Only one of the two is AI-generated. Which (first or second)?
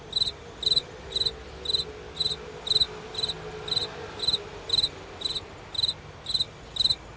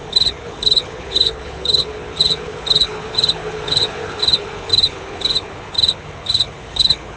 second